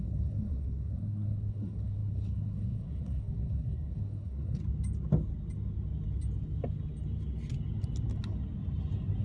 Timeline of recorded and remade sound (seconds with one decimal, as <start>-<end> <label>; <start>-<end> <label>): 0.0-4.6 remade; 4.6-9.2 recorded